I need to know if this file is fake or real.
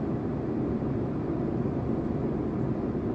real